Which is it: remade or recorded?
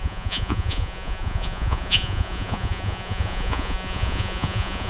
remade